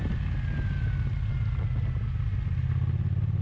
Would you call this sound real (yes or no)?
yes